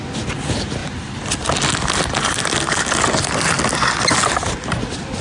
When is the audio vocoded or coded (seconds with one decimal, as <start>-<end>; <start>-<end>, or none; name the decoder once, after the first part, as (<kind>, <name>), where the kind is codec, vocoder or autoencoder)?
none